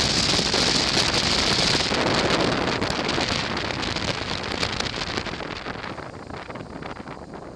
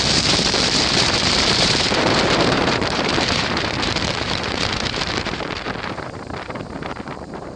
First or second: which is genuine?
first